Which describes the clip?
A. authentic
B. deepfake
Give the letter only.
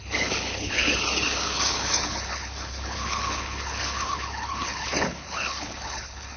B